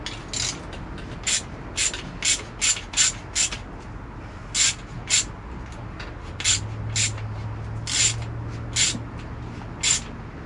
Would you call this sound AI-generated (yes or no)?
no